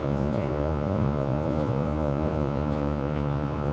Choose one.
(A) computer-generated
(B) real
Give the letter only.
A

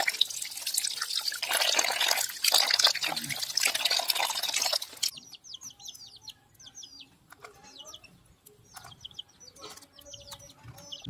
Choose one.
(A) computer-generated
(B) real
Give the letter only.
B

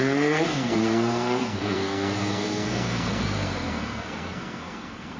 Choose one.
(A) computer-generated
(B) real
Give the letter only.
A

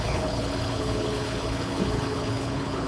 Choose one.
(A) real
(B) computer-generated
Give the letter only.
B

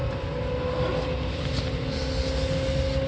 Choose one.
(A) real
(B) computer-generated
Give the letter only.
A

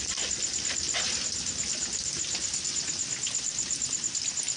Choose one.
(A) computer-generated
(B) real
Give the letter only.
B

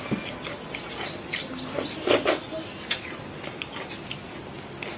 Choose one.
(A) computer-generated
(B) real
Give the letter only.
B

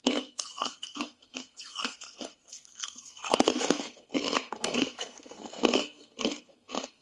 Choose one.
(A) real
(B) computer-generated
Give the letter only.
B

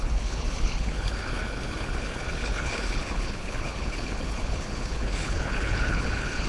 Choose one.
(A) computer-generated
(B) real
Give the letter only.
A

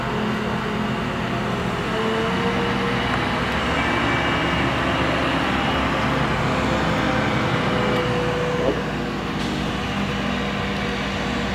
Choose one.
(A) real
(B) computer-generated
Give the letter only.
A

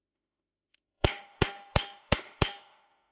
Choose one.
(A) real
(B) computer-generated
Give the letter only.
B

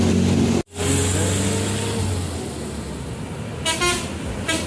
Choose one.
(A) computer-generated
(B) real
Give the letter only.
B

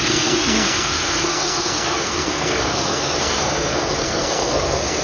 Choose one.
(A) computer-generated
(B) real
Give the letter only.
A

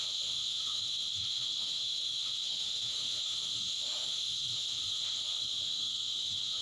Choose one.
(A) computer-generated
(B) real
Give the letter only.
A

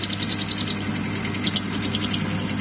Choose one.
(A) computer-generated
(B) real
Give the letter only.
B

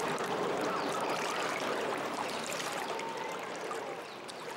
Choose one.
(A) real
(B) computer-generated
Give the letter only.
B